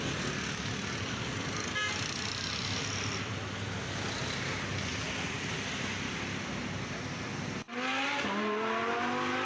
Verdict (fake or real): real